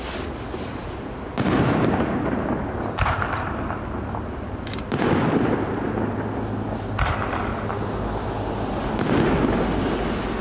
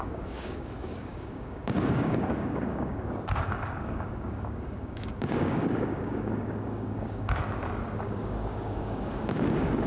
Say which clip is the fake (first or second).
second